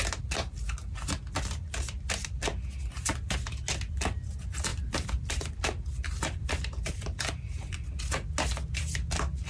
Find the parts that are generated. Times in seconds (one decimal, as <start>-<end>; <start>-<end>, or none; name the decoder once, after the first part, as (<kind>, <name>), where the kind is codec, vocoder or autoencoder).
4.7-8.0 (vocoder, BigVGAN v2)